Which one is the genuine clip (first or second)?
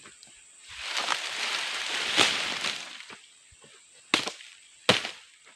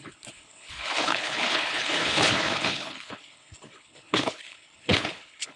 first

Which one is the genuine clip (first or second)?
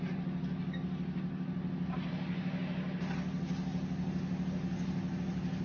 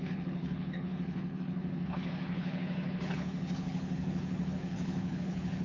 first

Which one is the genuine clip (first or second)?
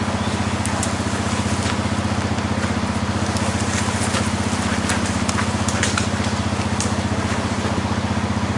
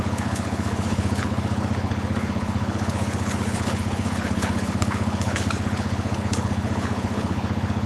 first